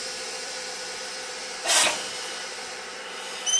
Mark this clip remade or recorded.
remade